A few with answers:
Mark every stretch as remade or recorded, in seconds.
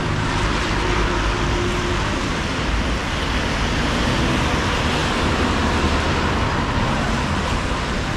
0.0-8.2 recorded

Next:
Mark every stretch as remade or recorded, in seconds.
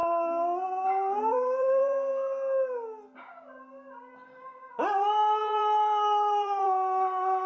0.0-1.2 recorded; 1.2-2.1 remade; 2.1-4.7 recorded; 4.7-7.5 remade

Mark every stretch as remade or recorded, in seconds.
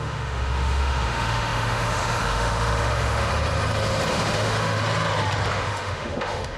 0.0-3.3 remade; 3.3-4.1 recorded; 4.1-4.8 remade; 4.8-5.5 recorded; 5.5-6.6 remade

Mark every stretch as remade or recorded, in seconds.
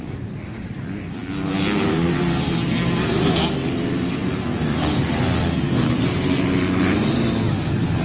0.0-8.0 recorded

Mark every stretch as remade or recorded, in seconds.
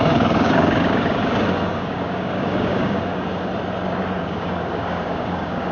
0.0-3.5 remade; 3.5-4.2 recorded; 4.2-5.7 remade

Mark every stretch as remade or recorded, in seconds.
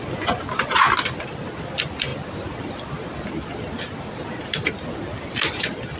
0.0-6.0 recorded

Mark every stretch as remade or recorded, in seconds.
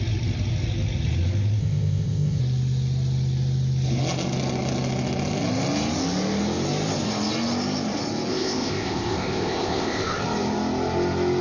0.0-1.6 recorded; 1.6-2.4 remade; 2.4-8.3 recorded; 8.3-10.2 remade; 10.2-11.4 recorded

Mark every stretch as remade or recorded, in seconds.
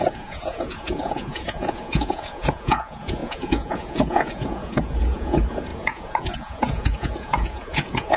0.0-8.2 remade